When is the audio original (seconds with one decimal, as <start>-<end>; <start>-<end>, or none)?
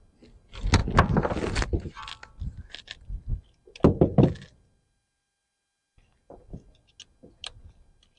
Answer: 0.0-8.2